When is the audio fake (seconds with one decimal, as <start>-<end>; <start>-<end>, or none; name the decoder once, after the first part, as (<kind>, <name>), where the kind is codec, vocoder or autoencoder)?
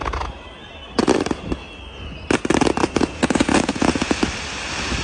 2.8-4.2 (vocoder, Vocos)